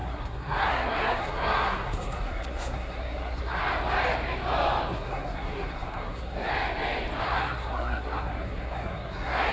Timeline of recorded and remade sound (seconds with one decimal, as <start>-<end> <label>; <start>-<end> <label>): 0.0-3.6 remade; 3.6-4.9 recorded; 4.9-6.5 remade; 6.5-7.2 recorded; 7.2-9.5 remade